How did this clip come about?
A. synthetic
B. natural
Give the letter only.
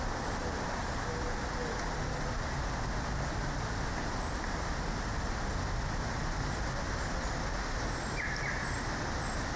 B